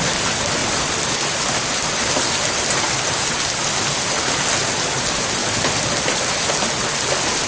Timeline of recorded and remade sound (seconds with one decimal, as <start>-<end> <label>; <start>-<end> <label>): 0.0-0.6 recorded; 0.6-2.1 remade; 2.1-5.4 recorded; 5.4-6.5 remade; 6.5-7.5 recorded